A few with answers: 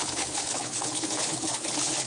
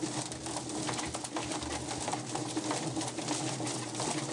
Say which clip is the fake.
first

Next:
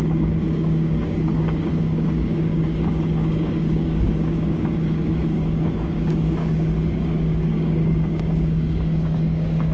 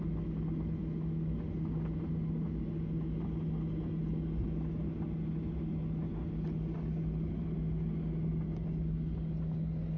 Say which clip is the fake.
first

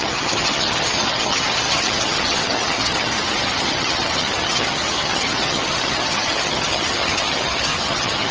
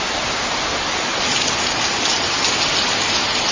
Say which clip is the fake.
first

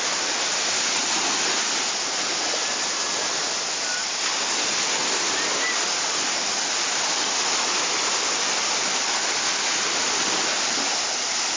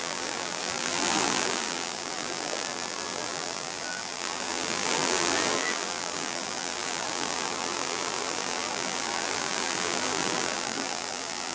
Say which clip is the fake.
second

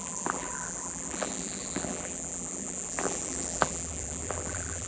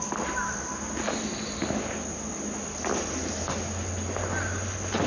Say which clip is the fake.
first